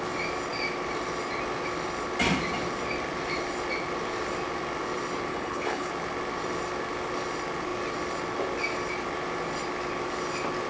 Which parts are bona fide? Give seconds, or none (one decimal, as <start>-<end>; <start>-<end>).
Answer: 0.0-5.3; 5.9-10.7